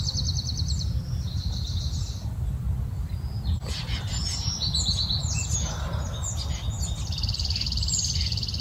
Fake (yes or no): no